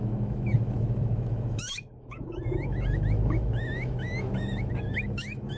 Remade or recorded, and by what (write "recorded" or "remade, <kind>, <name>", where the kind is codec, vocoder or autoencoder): remade, autoencoder, DAC-VAE